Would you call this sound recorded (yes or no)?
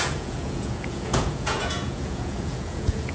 no